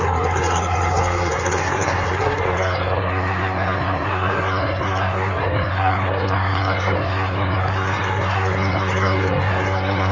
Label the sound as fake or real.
fake